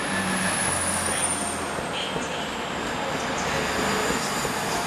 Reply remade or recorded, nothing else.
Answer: recorded